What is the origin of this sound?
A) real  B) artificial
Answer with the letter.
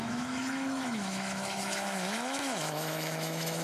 B